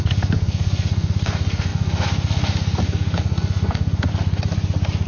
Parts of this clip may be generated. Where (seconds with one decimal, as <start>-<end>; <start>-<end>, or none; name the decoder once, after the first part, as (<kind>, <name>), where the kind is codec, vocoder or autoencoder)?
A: 0.0-4.1 (codec, SNAC)